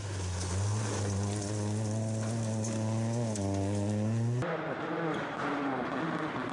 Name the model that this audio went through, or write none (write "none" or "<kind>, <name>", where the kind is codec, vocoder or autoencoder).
none